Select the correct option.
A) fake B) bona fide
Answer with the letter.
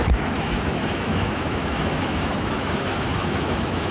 A